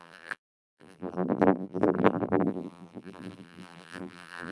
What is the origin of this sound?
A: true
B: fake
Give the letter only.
B